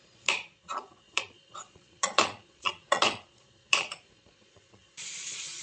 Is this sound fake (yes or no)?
yes